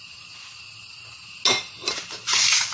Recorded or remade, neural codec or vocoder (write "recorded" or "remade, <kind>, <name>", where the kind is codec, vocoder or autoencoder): recorded